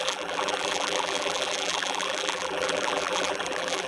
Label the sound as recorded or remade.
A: remade